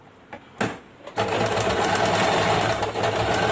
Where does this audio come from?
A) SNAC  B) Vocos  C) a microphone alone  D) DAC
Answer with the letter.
C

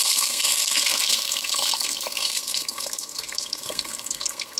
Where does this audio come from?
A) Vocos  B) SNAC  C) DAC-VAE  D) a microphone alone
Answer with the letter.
B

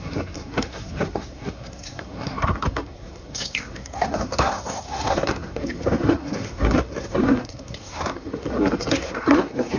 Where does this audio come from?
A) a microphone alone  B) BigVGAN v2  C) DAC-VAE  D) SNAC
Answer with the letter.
D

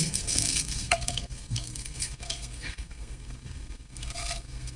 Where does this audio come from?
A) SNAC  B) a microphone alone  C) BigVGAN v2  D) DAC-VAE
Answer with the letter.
A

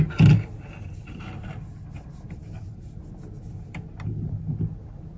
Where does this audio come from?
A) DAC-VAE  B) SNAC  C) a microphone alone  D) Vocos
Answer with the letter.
C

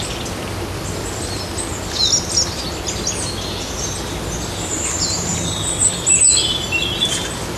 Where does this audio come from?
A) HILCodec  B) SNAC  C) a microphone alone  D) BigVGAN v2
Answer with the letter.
C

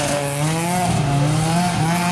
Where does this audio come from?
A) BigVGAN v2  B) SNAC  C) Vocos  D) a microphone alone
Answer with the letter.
D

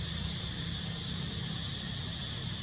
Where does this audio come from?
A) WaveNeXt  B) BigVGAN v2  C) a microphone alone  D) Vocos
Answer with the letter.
C